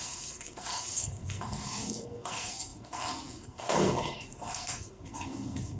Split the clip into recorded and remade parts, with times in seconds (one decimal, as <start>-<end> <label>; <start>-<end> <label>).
0.0-5.8 remade